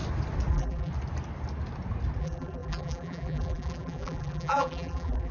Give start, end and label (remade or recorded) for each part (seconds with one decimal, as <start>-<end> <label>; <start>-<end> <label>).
0.0-0.5 recorded; 0.5-0.9 remade; 0.9-2.2 recorded; 2.2-5.3 remade